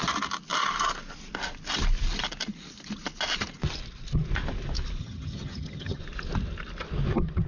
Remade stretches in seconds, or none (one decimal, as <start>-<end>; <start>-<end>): 5.0-6.0